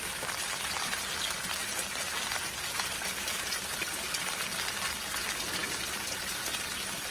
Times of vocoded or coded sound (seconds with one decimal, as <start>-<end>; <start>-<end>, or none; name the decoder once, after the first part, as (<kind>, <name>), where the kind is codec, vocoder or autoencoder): none